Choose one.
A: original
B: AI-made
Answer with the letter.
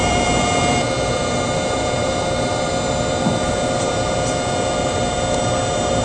B